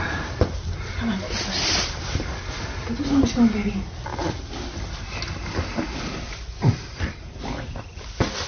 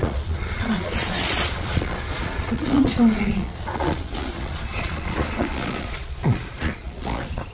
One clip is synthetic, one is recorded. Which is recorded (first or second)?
first